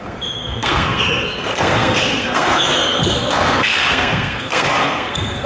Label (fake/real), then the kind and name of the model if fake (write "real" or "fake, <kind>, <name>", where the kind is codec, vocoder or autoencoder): fake, codec, SNAC